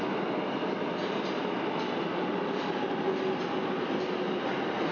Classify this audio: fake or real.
real